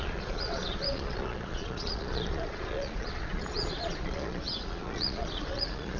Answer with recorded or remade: remade